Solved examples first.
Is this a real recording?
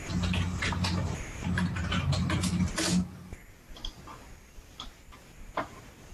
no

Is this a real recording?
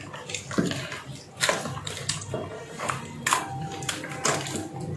yes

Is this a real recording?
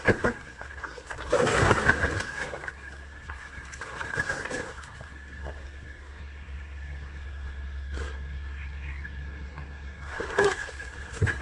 no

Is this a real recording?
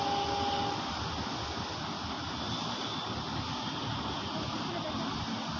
yes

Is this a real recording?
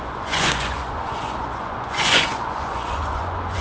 no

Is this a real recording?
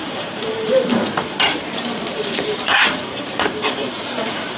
no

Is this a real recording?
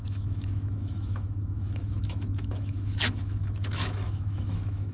no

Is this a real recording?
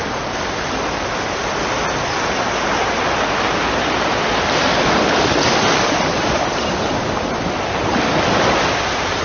yes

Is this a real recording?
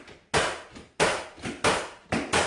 yes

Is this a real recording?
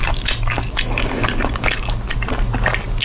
yes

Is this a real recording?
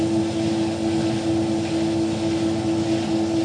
yes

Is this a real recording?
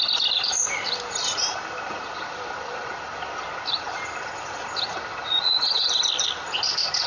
no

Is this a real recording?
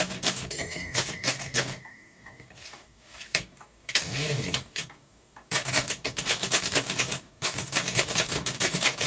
no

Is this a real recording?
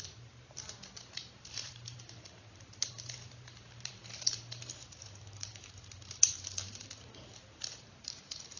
no